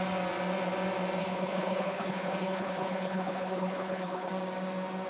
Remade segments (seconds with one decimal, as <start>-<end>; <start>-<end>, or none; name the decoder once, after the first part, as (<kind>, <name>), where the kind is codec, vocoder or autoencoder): 1.2-4.3 (codec, HILCodec)